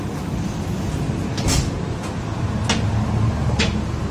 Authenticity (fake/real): real